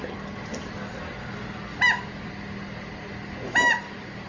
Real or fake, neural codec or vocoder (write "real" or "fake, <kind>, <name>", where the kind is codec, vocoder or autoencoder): real